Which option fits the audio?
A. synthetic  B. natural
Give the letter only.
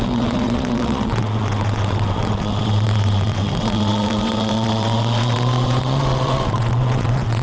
A